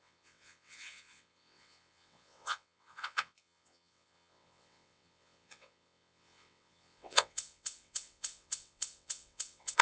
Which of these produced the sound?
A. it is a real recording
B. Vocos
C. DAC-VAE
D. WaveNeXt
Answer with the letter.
D